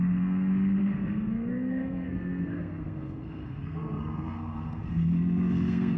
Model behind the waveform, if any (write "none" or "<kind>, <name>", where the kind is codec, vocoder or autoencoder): codec, SNAC